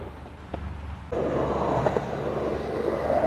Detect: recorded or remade recorded